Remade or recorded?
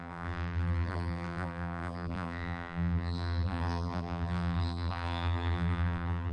remade